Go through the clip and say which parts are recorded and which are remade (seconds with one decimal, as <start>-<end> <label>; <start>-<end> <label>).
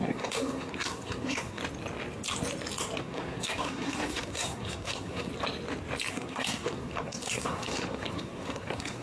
0.0-1.6 remade; 1.6-3.0 recorded; 3.0-5.3 remade; 5.3-6.1 recorded; 6.1-9.0 remade